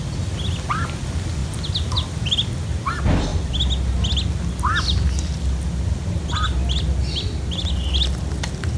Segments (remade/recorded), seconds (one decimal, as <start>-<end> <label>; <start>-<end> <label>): 0.0-8.8 recorded